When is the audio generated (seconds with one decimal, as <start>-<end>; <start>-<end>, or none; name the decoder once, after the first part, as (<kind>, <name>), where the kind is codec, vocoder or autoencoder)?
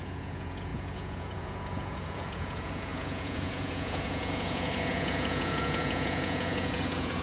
0.0-7.2 (vocoder, Vocos)